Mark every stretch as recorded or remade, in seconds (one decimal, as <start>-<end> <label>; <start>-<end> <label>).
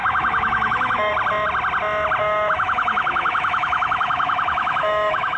0.0-1.1 remade; 1.1-2.2 recorded; 2.2-5.4 remade